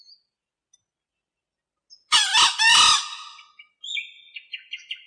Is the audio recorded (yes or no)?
yes